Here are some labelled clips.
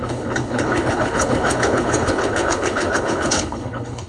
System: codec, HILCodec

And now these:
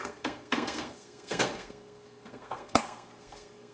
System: codec, SNAC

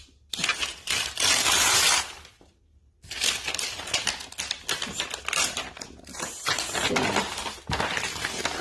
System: none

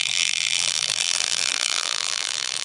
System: vocoder, BigVGAN v2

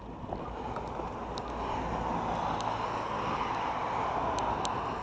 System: none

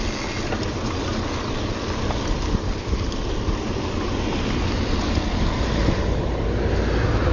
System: none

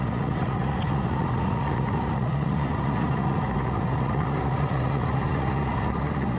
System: vocoder, Vocos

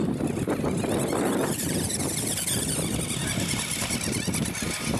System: none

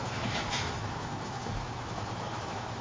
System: autoencoder, DAC-VAE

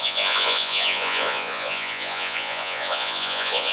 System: vocoder, Vocos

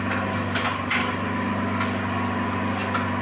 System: none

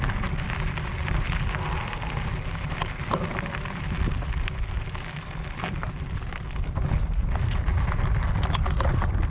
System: none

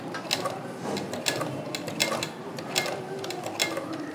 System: none